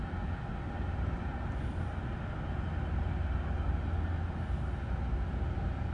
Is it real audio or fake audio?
real